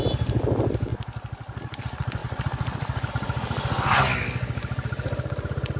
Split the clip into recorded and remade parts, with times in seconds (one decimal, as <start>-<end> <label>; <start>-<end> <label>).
0.0-5.8 recorded